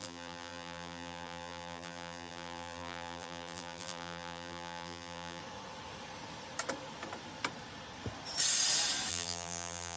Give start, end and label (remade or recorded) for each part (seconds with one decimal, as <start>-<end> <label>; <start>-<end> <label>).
0.0-5.4 remade; 5.4-9.1 recorded; 9.1-10.0 remade

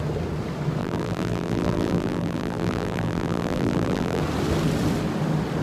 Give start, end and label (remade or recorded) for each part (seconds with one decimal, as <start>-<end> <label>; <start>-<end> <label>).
0.0-0.8 recorded; 0.8-4.2 remade; 4.2-5.6 recorded

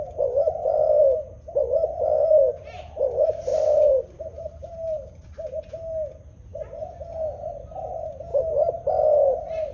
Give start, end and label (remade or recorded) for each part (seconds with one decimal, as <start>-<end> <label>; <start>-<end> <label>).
0.0-3.5 recorded; 3.5-5.7 remade; 5.7-8.3 recorded; 8.3-9.0 remade; 9.0-9.7 recorded

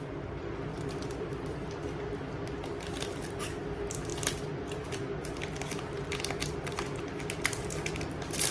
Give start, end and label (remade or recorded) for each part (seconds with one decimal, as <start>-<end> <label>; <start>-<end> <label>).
0.0-0.7 recorded; 0.7-1.7 remade; 1.7-4.1 recorded; 4.1-5.2 remade; 5.2-8.5 recorded